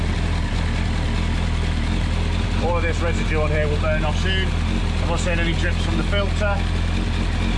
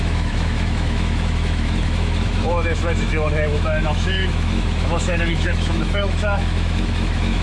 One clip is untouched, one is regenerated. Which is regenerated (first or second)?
second